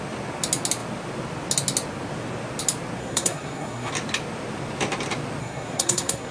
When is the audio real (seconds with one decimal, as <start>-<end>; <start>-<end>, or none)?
0.0-3.0; 3.9-5.4